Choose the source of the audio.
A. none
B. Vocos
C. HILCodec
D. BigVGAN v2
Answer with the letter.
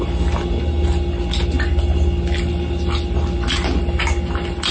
A